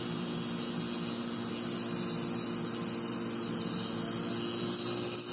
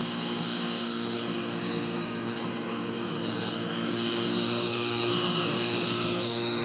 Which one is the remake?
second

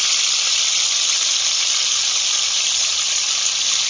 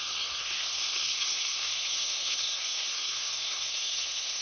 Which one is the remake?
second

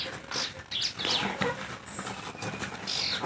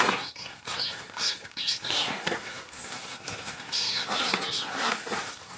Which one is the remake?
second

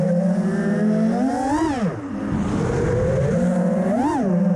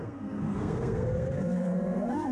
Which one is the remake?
second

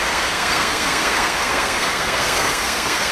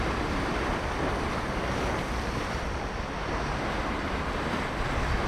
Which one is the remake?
first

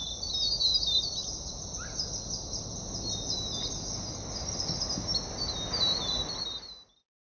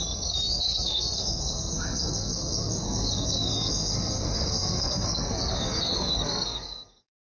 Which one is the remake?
second